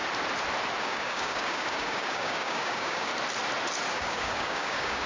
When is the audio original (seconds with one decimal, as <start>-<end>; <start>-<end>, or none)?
0.0-0.8; 3.1-3.9